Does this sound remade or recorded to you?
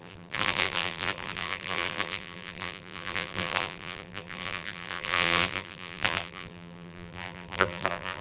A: remade